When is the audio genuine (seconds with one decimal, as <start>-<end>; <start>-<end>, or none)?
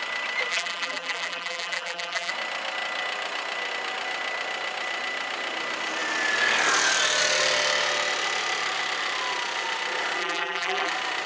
0.0-0.5; 2.3-10.2; 10.9-11.3